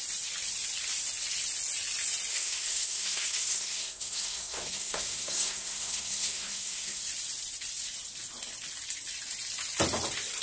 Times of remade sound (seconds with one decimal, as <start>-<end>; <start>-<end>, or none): 2.3-7.0